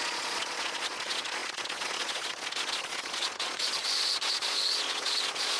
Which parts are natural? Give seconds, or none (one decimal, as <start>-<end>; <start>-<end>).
none